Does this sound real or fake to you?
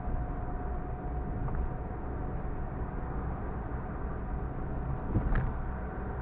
real